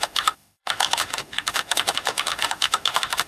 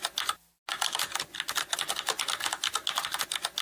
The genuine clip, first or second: second